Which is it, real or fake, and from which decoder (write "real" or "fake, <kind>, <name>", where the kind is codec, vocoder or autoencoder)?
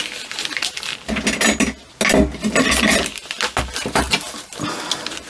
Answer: real